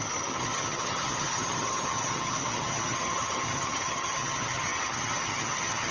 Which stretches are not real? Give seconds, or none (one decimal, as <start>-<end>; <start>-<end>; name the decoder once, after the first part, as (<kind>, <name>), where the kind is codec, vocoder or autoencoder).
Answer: 0.0-5.9 (vocoder, HiFi-GAN)